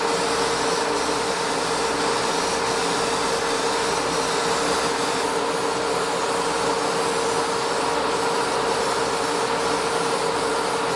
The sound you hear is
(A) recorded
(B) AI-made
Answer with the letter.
A